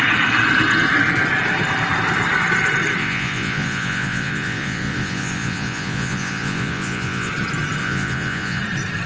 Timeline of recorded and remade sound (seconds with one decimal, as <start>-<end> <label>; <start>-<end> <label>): 0.0-3.0 recorded; 3.0-7.3 remade; 7.3-7.8 recorded; 7.8-8.6 remade; 8.6-9.1 recorded